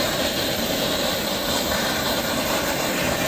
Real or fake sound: fake